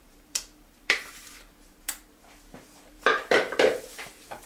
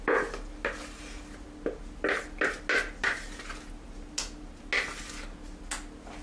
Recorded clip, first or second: second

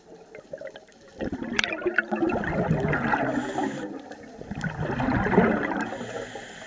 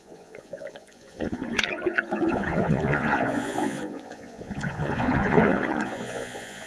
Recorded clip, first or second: first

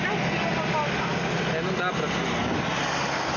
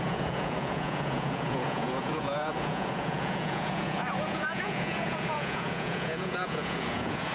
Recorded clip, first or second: first